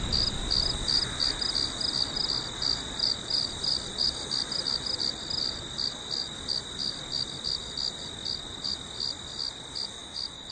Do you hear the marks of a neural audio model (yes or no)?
no